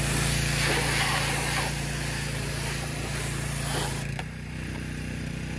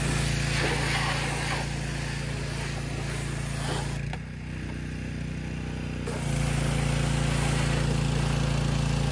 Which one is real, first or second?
second